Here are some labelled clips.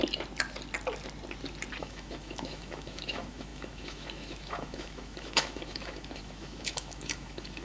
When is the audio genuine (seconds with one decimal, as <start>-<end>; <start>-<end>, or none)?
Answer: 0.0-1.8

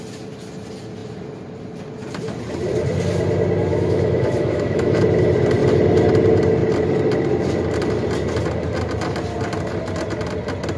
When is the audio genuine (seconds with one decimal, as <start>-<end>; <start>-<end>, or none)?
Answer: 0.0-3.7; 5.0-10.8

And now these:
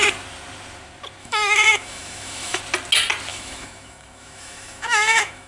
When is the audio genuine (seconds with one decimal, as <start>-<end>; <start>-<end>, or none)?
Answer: 0.0-1.2; 2.6-3.3